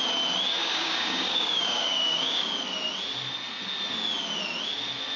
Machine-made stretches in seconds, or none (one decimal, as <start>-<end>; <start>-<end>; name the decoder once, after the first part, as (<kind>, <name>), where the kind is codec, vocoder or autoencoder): 0.6-2.5 (codec, DAC)